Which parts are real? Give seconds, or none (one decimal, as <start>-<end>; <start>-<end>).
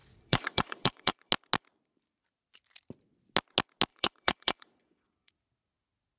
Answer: 1.3-3.9; 5.3-6.2